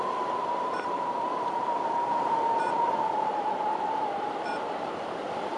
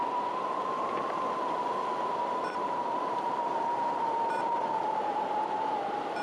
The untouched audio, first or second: second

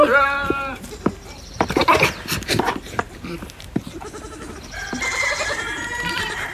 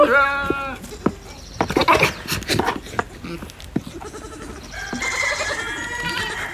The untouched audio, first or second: second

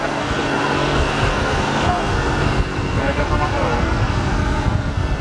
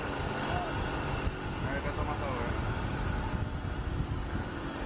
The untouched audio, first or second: second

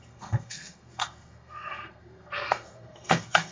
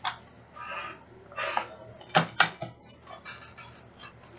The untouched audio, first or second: second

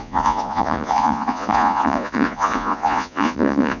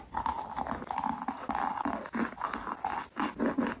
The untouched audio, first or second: second